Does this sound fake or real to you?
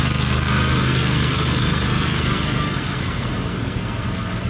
fake